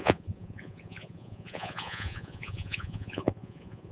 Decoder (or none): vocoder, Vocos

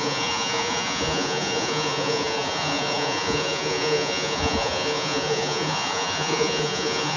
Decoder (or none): vocoder, Vocos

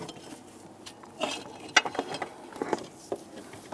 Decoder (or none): none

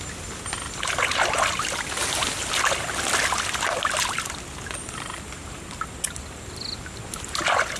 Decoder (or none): none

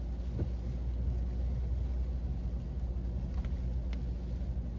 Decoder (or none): none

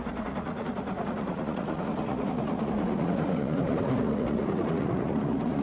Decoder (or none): vocoder, Vocos